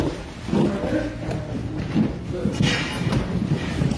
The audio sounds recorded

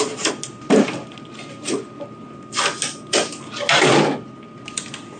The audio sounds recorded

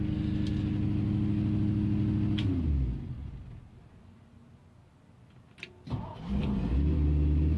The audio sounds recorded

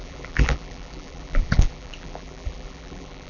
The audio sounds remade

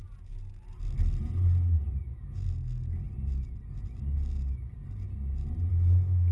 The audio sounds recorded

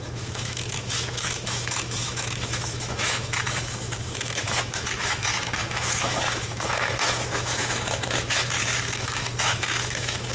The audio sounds remade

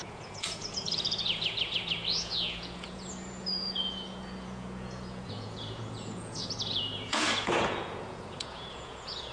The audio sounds remade